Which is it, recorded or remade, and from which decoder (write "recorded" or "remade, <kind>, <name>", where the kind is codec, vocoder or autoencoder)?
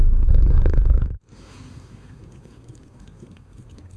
remade, codec, SNAC